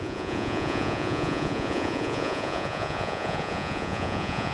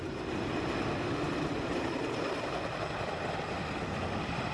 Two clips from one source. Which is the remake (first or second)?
first